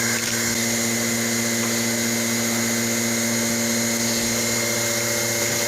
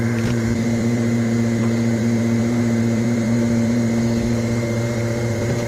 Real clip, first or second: first